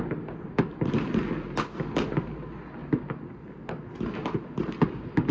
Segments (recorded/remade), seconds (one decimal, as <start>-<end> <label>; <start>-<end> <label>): 0.0-5.3 recorded